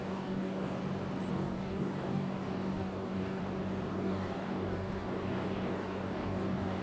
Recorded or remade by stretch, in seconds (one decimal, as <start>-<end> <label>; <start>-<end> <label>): 0.0-0.8 remade; 0.8-1.3 recorded; 1.3-3.4 remade; 3.4-3.9 recorded; 3.9-6.8 remade